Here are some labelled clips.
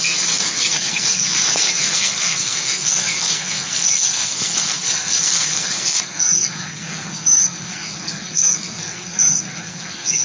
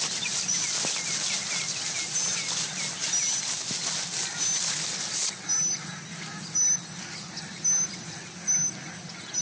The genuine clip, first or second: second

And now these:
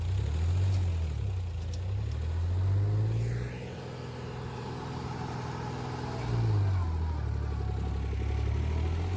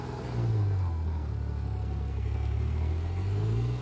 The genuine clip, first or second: first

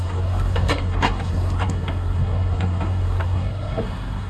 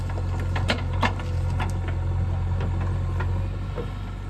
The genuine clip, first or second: second